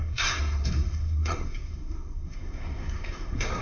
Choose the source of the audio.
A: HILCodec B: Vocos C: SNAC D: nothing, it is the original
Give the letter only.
C